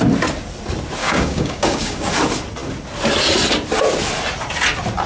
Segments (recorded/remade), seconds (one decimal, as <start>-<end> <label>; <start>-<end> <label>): 0.0-1.0 recorded; 1.0-2.1 remade; 2.1-5.1 recorded